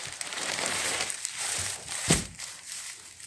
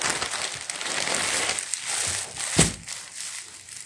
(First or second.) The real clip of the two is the second